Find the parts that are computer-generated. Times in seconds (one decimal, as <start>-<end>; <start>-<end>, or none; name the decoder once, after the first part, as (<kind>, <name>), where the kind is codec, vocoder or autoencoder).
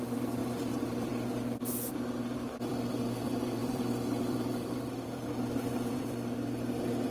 0.0-7.1 (vocoder, BigVGAN v2)